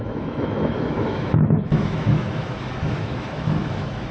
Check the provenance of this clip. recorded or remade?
remade